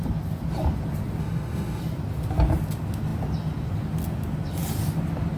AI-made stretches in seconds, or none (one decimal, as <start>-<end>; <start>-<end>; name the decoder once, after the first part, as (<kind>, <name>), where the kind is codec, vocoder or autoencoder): 1.2-1.8 (autoencoder, DAC-VAE)